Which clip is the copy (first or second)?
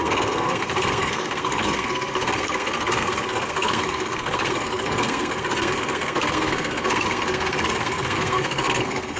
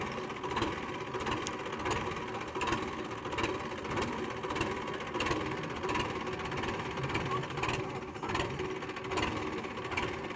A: first